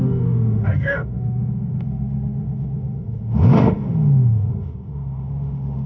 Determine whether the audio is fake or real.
fake